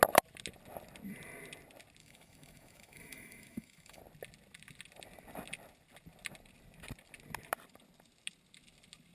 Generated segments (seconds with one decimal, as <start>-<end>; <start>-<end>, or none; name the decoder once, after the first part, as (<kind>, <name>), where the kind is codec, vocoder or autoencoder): 2.0-4.0 (autoencoder, DAC-VAE)